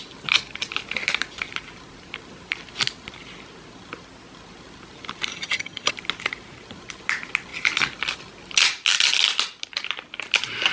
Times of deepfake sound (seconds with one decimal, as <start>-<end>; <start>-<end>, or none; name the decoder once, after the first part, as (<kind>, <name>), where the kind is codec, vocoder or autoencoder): 5.3-5.9 (vocoder, HiFi-GAN)